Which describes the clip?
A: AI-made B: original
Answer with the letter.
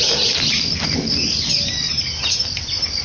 B